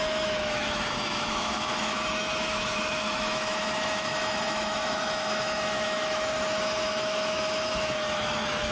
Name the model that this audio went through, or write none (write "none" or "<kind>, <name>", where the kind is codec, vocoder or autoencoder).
autoencoder, DAC-VAE